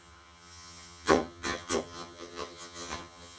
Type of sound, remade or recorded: remade